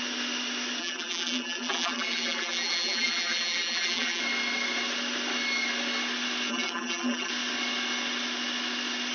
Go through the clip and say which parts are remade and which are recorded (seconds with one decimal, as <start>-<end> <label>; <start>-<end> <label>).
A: 0.0-0.8 recorded; 0.8-4.2 remade; 4.2-6.5 recorded; 6.5-7.3 remade; 7.3-9.1 recorded